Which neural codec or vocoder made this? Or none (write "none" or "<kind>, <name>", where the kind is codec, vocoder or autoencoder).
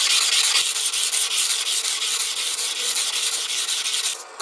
none